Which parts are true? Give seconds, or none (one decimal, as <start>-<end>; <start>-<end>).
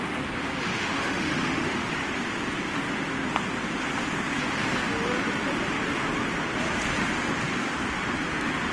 0.0-0.7; 1.9-8.7